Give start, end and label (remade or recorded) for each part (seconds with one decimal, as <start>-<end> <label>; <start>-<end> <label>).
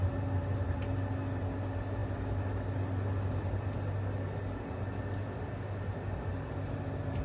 0.0-7.2 recorded